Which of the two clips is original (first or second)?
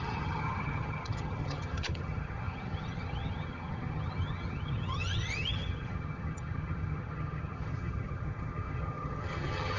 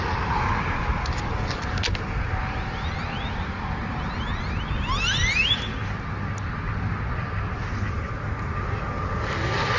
second